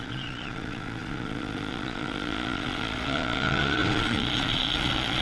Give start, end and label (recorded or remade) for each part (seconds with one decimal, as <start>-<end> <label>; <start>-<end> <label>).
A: 0.0-5.2 remade